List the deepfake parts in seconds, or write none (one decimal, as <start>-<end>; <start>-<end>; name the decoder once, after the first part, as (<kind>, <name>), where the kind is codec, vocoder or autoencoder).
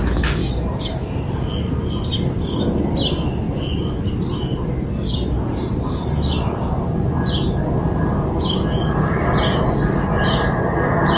none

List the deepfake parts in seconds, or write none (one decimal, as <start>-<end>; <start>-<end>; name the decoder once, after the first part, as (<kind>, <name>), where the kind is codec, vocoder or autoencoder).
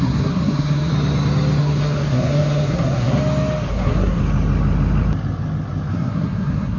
0.0-0.9 (codec, SNAC); 1.6-3.2; 3.7-4.2; 5.9-6.8